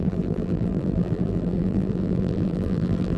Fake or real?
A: fake